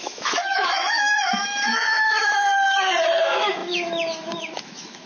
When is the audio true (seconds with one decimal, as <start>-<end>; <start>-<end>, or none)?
2.5-3.2